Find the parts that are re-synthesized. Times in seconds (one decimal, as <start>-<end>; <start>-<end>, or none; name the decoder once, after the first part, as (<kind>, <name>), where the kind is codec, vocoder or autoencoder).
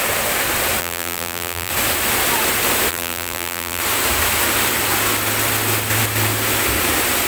0.8-1.7 (vocoder, BigVGAN v2); 2.9-3.8